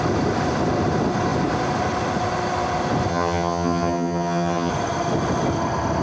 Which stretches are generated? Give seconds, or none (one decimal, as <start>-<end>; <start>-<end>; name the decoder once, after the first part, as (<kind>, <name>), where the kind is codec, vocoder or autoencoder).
3.1-4.7 (vocoder, HiFi-GAN)